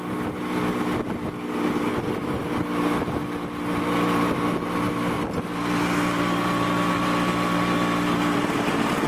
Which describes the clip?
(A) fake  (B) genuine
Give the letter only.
B